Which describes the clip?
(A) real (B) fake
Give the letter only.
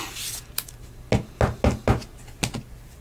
A